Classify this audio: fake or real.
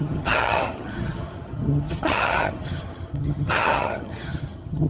fake